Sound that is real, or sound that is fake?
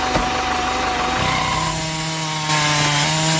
real